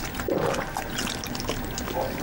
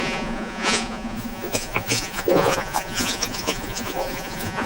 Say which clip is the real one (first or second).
first